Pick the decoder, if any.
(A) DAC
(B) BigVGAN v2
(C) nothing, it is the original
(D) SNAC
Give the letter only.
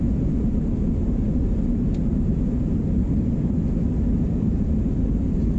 B